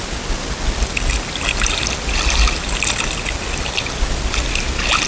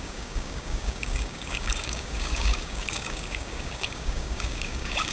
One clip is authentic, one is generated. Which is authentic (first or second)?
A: first